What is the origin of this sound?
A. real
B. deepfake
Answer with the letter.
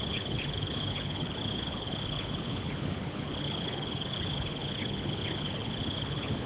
B